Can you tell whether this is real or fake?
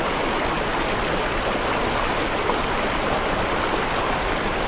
real